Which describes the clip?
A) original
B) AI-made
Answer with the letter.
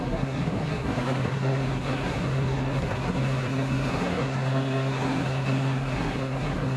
B